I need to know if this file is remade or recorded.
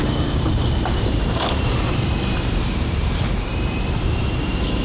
remade